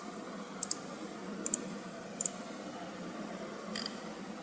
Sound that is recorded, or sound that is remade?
recorded